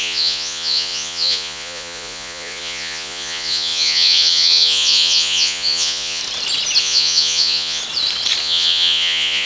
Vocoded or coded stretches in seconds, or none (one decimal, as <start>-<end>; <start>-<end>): 0.0-6.2; 6.8-7.8; 8.4-9.5